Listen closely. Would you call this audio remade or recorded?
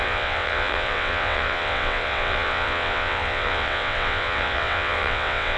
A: remade